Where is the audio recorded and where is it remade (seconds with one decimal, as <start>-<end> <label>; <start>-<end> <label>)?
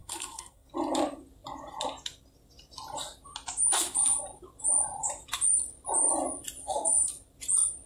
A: 0.0-0.7 remade; 0.7-6.6 recorded; 6.6-7.1 remade; 7.1-7.9 recorded